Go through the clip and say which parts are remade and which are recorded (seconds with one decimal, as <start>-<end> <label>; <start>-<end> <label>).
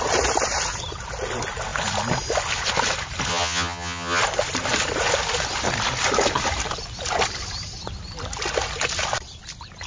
0.0-3.3 recorded; 3.3-4.2 remade; 4.2-9.9 recorded